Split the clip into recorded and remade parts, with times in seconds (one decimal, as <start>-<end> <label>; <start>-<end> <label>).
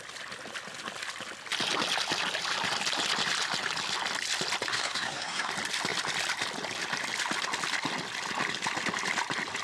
0.0-4.7 recorded; 4.7-5.5 remade; 5.5-9.6 recorded